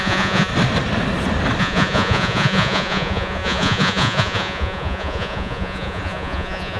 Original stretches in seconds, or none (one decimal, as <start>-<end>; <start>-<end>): 0.5-1.6

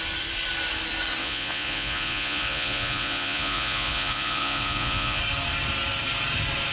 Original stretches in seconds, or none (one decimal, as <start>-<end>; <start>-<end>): 0.0-1.2; 5.2-6.7

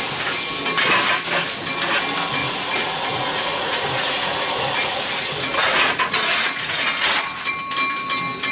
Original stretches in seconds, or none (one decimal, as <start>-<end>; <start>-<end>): 0.0-2.4; 7.5-8.5

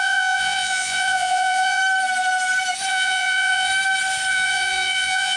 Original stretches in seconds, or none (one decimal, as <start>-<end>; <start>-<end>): 1.8-2.9; 3.7-4.3

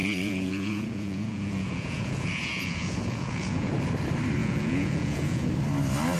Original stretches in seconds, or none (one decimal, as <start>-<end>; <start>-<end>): 3.7-4.4; 5.5-6.2

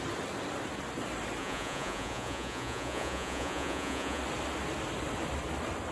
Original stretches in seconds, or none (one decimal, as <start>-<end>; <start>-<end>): 0.0-1.4; 4.2-5.9

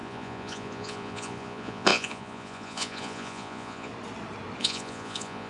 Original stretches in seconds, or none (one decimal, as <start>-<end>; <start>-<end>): 3.9-4.6

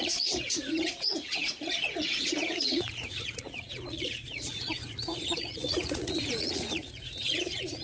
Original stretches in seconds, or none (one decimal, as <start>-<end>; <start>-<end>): none